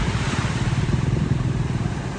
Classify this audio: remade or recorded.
recorded